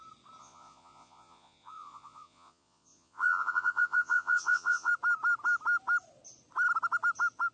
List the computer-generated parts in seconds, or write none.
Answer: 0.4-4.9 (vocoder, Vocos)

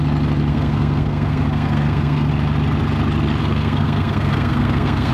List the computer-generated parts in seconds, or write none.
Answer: 0.5-2.3 (codec, SNAC); 3.4-5.1

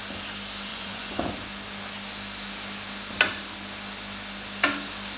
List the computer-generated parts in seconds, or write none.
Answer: 0.7-1.3 (vocoder, Vocos)

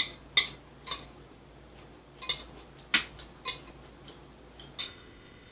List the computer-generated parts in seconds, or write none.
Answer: 4.8-5.5 (codec, ZipCodec)

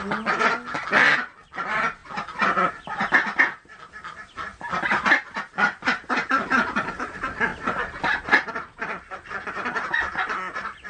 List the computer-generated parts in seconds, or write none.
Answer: none

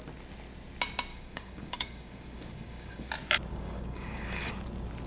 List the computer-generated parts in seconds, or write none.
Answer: 1.1-3.1 (codec, DAC); 3.5-4.5

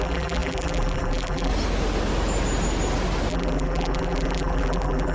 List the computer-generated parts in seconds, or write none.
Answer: 0.0-1.5 (vocoder, BigVGAN v2); 3.3-5.1